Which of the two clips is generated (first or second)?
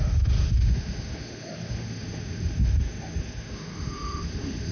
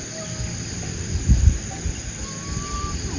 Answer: first